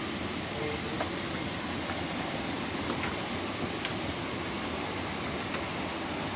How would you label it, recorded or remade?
recorded